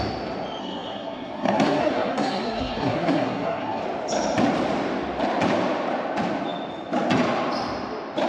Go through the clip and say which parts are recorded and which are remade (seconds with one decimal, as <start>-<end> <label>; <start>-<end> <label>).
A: 0.0-0.6 recorded; 0.6-3.8 remade; 3.8-8.3 recorded